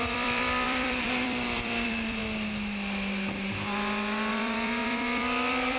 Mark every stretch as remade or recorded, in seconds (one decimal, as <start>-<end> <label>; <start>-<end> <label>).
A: 0.0-2.2 remade; 2.2-4.3 recorded; 4.3-5.8 remade